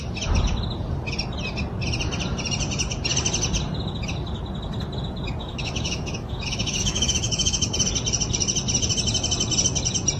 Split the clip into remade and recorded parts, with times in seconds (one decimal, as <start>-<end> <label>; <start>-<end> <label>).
0.0-5.4 recorded; 5.4-7.7 remade; 7.7-10.2 recorded